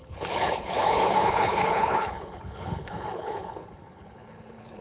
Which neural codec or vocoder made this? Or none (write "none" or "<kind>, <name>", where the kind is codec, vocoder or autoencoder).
codec, HILCodec